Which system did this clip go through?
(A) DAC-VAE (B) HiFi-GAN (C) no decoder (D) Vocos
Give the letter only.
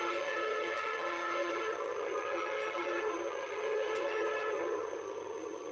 B